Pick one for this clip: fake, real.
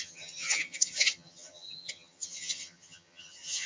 fake